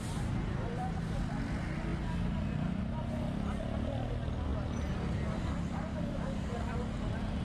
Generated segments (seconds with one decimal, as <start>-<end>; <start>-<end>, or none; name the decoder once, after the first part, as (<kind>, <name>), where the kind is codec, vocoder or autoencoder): 5.9-6.6 (codec, DAC)